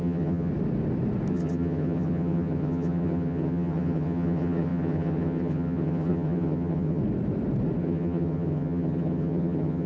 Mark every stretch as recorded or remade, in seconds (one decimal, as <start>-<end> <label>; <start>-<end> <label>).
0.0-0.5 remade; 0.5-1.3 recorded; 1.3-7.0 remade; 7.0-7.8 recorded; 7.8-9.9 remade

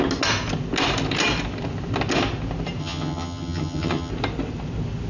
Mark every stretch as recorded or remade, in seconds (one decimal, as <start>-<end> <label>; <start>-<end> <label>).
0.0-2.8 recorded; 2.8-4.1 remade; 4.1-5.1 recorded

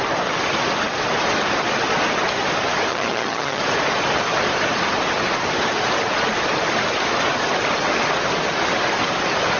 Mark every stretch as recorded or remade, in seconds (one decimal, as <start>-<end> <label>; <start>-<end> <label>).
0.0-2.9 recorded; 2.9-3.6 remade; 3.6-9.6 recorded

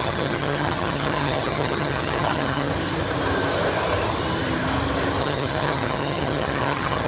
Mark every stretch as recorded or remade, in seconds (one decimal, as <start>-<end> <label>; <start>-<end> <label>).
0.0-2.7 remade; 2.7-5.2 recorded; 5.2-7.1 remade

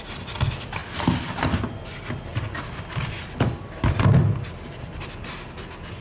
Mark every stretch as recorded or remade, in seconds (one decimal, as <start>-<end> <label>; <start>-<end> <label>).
0.0-6.0 recorded